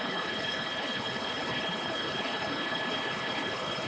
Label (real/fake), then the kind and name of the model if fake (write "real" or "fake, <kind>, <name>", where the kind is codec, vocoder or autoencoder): fake, codec, HILCodec